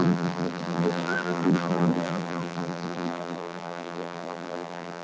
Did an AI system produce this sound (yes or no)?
yes